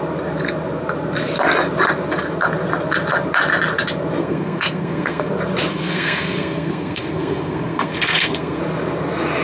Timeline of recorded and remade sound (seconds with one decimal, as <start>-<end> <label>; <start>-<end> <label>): 0.0-4.2 recorded; 4.2-5.3 remade; 5.3-5.7 recorded; 5.7-8.6 remade; 8.6-9.4 recorded